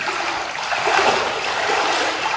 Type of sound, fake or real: real